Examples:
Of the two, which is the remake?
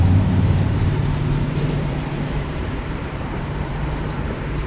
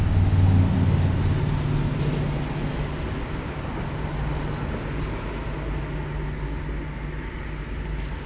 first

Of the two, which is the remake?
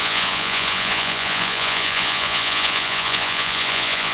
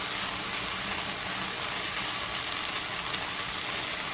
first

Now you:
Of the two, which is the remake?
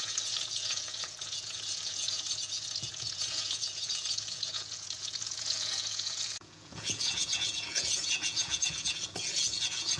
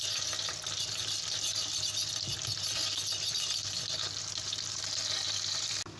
first